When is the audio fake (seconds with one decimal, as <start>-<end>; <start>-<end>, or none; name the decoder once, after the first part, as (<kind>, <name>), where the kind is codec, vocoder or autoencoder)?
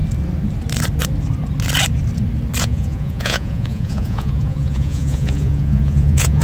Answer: 2.6-6.4 (vocoder, Vocos)